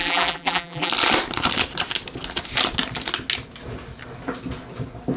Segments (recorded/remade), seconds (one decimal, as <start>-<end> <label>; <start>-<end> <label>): 0.0-0.9 remade; 0.9-5.2 recorded